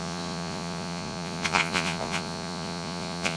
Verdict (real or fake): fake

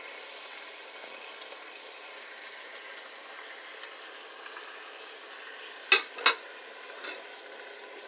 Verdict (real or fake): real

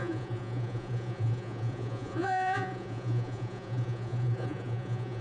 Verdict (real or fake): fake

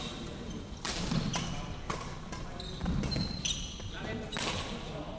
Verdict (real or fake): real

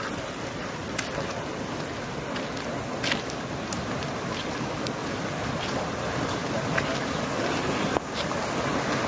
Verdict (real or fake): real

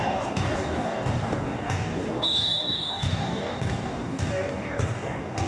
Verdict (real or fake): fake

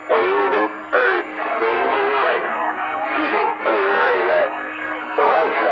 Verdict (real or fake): fake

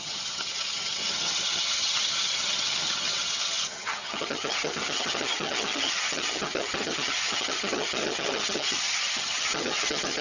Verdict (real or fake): fake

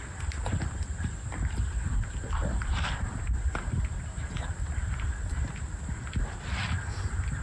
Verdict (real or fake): real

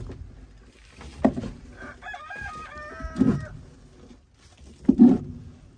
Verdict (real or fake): real